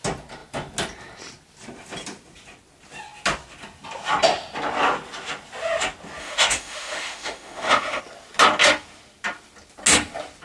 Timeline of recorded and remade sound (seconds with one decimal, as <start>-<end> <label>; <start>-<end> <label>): 0.0-6.2 recorded; 6.2-8.0 remade; 8.0-10.4 recorded